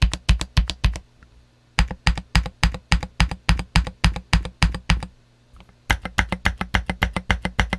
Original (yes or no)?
yes